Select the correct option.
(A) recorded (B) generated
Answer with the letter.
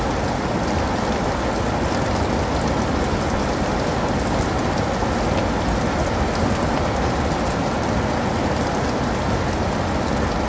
A